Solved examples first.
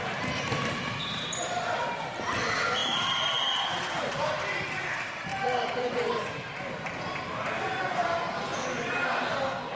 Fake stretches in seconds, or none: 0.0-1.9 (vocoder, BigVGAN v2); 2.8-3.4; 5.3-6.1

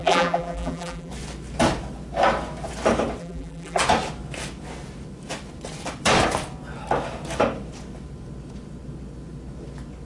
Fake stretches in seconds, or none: 0.0-1.1 (vocoder, BigVGAN v2); 3.2-3.8